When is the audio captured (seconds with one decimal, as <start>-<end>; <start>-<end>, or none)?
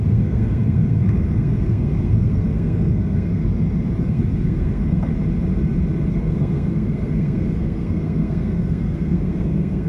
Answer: 3.4-4.0; 5.1-6.1